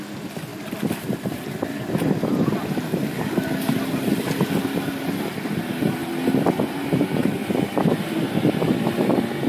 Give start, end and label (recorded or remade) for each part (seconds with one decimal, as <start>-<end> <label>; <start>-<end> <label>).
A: 0.0-7.4 recorded; 7.4-8.7 remade; 8.7-9.5 recorded